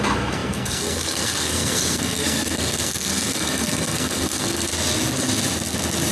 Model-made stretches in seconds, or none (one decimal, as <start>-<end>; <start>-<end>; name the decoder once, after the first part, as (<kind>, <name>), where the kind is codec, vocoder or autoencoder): 0.0-4.7 (codec, SNAC)